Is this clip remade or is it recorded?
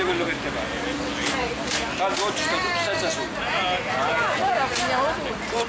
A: recorded